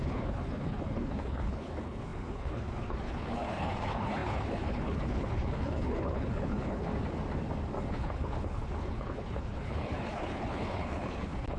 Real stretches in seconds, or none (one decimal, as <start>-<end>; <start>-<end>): 6.9-7.9